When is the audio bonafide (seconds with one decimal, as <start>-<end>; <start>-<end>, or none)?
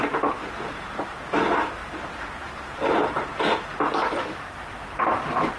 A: none